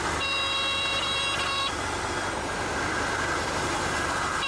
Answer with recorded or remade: recorded